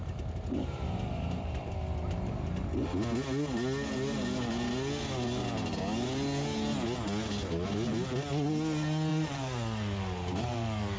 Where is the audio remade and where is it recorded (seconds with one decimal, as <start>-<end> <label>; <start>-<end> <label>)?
0.0-1.7 remade; 1.7-9.1 recorded; 9.1-11.0 remade